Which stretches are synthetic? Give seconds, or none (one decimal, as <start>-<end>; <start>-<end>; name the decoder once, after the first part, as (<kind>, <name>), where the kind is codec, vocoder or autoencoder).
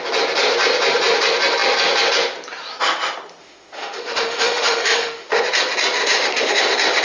3.4-5.4 (autoencoder, DAC-VAE); 6.0-6.6